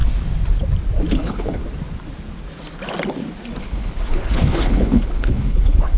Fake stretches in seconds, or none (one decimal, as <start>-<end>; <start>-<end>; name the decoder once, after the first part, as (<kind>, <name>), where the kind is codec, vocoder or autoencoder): 1.1-1.6 (codec, HILCodec); 3.6-6.0